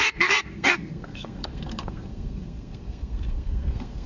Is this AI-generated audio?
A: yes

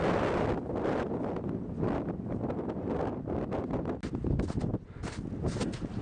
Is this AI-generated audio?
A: no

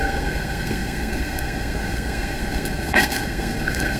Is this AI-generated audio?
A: yes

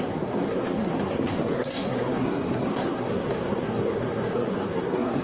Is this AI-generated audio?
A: yes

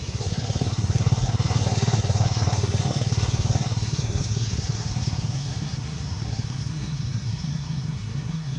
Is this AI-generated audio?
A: yes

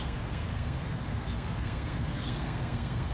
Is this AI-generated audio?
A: yes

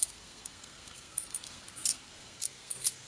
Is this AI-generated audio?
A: yes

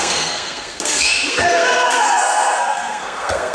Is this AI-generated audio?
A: yes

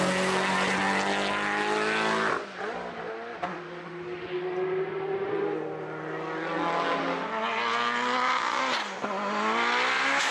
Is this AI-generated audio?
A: no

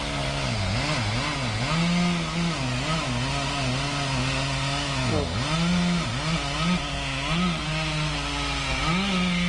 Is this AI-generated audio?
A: no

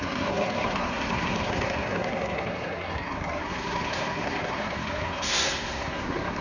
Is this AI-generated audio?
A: yes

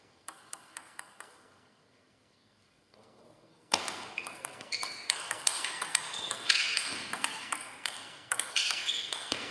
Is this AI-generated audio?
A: yes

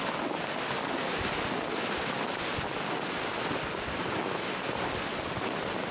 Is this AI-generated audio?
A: no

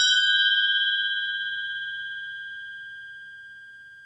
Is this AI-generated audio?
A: no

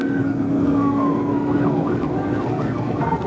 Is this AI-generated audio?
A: yes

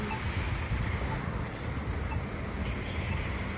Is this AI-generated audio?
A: no